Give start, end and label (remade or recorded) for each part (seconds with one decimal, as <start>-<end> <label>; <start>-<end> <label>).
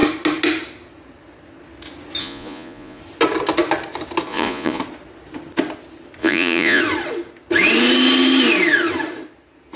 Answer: 0.0-2.2 recorded; 2.2-3.0 remade; 3.0-4.3 recorded; 4.3-4.8 remade; 4.8-6.2 recorded; 6.2-6.8 remade; 6.8-9.8 recorded